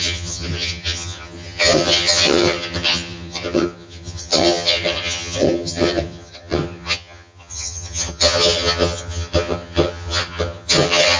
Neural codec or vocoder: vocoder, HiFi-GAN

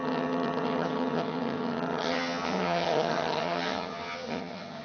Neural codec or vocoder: vocoder, HiFi-GAN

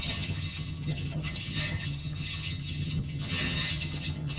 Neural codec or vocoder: vocoder, HiFi-GAN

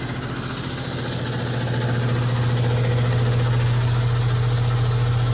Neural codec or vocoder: none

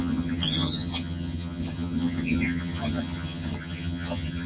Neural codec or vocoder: vocoder, HiFi-GAN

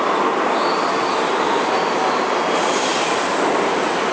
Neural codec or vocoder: none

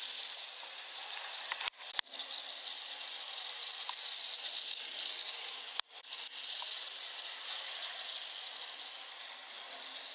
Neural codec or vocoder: none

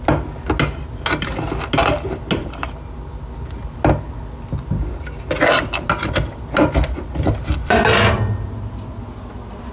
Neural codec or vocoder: none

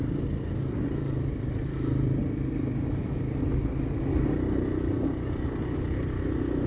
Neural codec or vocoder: none